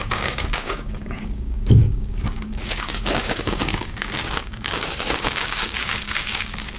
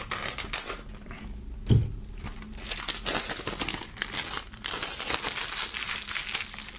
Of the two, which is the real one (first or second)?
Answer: second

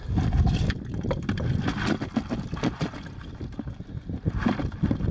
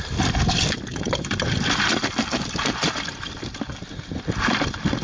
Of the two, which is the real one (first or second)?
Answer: first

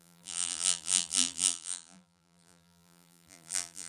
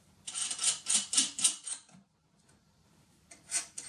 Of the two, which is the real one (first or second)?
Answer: second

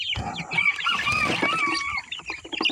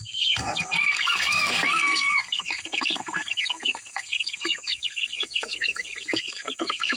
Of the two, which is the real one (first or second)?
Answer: first